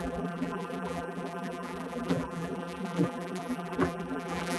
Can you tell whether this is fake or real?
fake